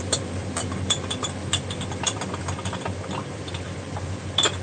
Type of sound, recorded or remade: recorded